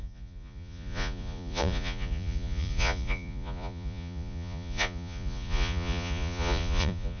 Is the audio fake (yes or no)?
yes